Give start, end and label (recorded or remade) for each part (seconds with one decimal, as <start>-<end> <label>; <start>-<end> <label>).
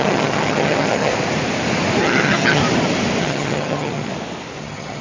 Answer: 0.0-1.1 remade; 1.1-2.0 recorded; 2.0-2.6 remade; 2.6-3.2 recorded; 3.2-4.1 remade; 4.1-4.6 recorded; 4.6-5.0 remade